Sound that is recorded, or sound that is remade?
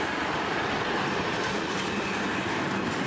recorded